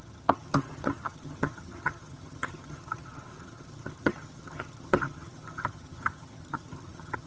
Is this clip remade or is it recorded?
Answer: remade